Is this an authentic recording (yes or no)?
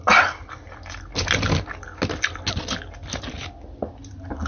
yes